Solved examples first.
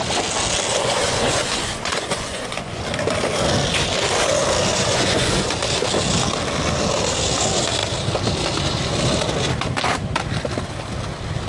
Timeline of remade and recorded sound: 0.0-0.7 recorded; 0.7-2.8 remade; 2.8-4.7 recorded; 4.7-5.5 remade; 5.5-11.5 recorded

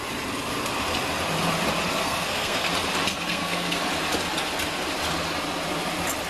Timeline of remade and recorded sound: 0.0-2.0 recorded; 2.0-2.7 remade; 2.7-3.1 recorded; 3.1-3.8 remade; 3.8-6.3 recorded